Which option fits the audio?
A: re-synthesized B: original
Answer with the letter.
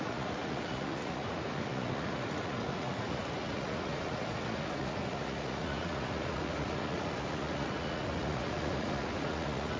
A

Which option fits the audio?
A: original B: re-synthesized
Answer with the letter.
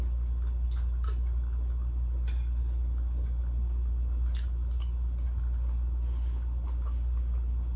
A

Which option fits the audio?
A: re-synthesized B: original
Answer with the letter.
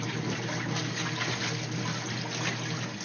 B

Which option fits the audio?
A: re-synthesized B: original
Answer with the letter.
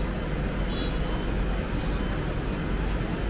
B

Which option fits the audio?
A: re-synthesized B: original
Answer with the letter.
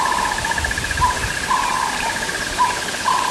B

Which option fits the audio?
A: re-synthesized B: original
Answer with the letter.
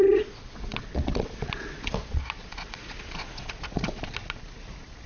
A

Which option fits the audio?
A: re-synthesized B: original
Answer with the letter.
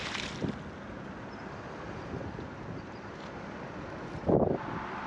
B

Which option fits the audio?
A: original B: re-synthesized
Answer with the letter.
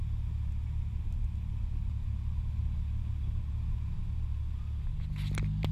A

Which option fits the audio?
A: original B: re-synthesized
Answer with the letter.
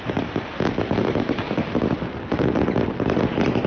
A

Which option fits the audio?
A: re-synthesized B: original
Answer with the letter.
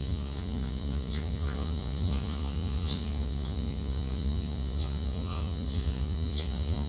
A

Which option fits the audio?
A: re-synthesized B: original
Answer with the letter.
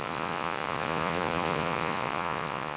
A